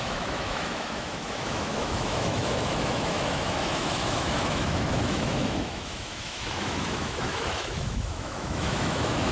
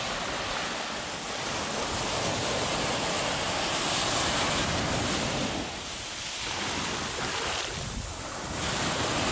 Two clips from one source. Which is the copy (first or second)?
first